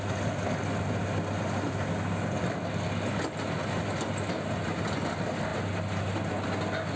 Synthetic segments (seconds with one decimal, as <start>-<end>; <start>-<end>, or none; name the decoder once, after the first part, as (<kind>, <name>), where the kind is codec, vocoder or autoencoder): none